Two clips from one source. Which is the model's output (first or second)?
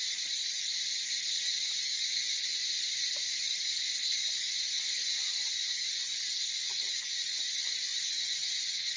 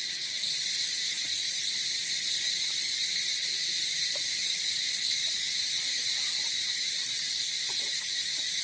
second